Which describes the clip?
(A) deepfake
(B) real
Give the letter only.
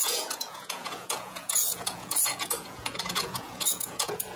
A